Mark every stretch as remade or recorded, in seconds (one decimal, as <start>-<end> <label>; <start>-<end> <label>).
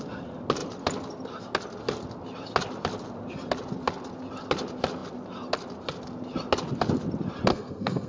0.0-7.5 recorded; 7.5-8.1 remade